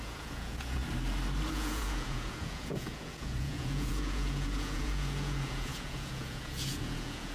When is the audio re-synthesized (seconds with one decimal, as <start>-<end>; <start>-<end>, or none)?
0.0-0.8; 1.5-7.3